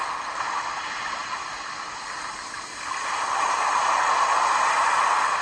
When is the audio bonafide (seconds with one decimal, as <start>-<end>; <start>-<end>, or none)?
0.0-5.4